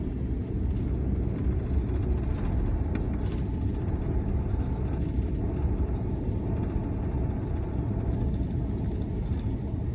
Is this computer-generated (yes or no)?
no